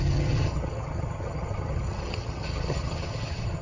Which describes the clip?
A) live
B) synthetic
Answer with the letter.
B